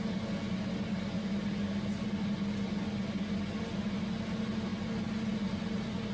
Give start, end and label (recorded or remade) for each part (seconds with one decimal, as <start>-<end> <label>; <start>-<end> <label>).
0.0-6.1 recorded